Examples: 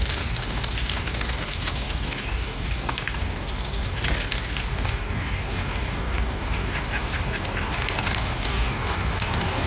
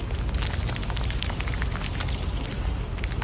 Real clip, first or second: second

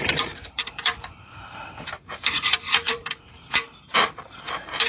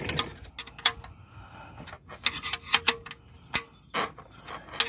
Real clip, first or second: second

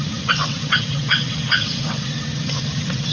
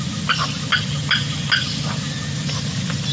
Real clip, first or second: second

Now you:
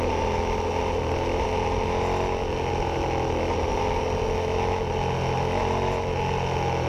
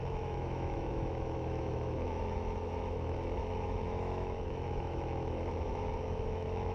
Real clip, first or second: first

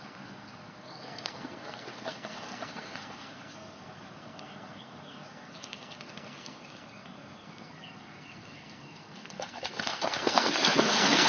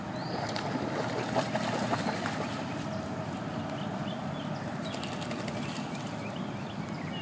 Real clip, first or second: second